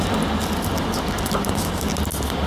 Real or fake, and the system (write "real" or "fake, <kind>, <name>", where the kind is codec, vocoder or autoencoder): real